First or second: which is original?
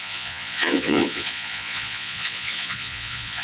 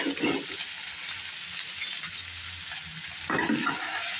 second